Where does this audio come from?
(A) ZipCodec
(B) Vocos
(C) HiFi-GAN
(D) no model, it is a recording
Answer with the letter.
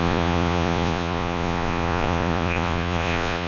B